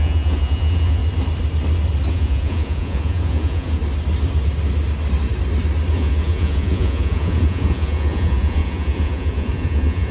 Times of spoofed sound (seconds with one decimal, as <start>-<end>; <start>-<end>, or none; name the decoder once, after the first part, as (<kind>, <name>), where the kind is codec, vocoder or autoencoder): 0.0-1.0 (vocoder, Vocos); 2.1-3.8; 5.9-10.1